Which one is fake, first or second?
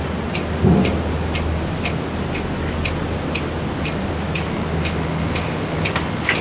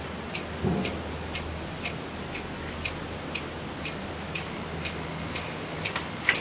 second